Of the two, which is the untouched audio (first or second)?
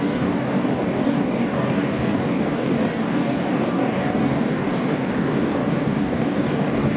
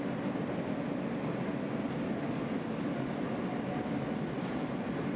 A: second